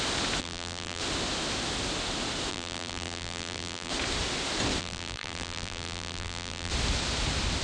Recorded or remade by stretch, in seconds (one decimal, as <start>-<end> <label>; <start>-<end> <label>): 0.0-0.4 recorded; 0.4-1.0 remade; 1.0-2.5 recorded; 2.5-3.9 remade; 3.9-4.8 recorded; 4.8-6.7 remade; 6.7-7.6 recorded